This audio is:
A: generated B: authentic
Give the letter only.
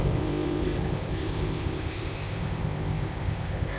A